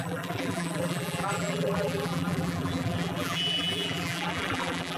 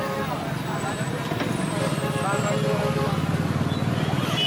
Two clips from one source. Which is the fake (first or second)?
first